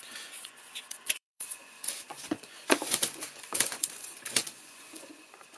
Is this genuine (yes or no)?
no